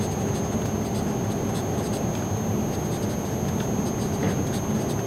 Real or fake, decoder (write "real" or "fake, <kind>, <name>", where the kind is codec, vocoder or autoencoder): real